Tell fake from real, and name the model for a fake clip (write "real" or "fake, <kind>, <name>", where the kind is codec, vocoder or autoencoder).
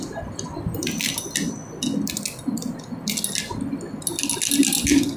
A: real